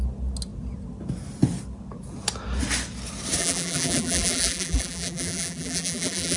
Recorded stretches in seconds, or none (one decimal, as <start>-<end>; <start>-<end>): 0.0-3.4